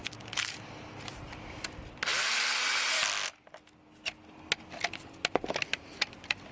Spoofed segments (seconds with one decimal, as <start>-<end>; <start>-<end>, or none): 0.0-1.4